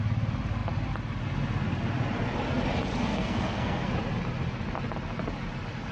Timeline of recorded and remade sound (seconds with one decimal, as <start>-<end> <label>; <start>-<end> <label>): 0.0-3.1 recorded; 3.1-3.9 remade; 3.9-5.9 recorded